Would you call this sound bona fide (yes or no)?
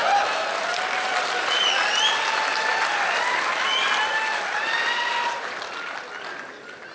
yes